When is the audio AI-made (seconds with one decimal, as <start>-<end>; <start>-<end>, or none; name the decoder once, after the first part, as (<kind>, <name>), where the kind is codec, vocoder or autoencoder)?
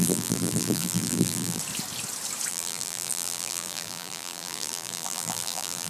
0.0-1.6 (vocoder, BigVGAN v2); 2.5-5.9